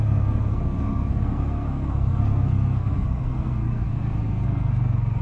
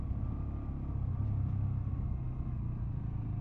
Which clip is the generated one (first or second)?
first